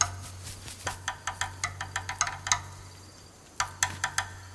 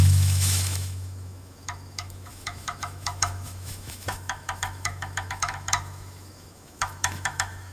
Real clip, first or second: first